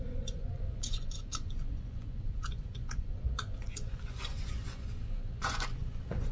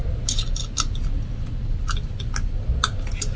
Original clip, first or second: second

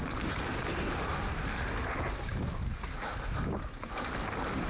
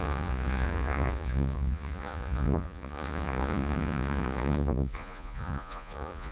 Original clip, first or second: first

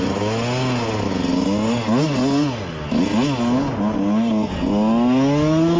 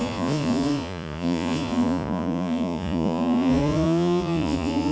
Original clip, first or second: first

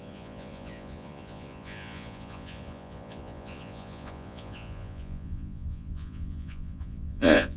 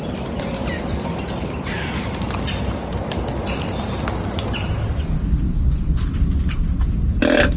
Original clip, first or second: second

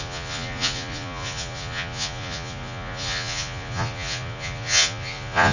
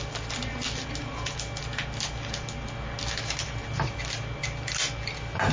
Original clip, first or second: second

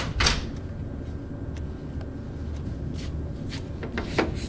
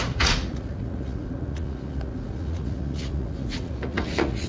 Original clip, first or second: first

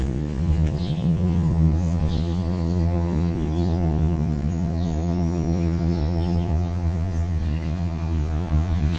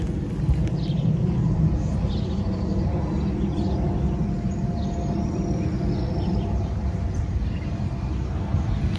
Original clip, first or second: second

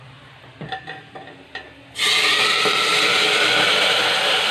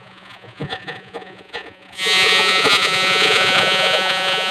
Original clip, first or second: first